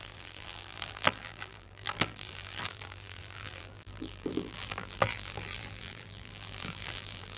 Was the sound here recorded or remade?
remade